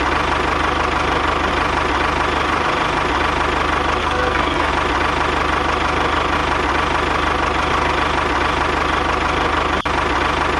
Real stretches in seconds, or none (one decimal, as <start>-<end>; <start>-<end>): 0.0-4.0; 4.7-10.6